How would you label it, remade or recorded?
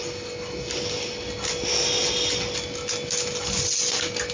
recorded